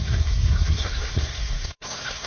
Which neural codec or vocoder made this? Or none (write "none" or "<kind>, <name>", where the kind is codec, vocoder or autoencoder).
codec, SNAC